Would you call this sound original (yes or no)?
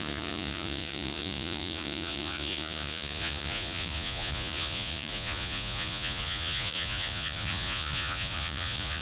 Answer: no